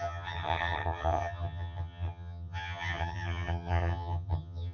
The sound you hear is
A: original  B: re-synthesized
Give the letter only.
B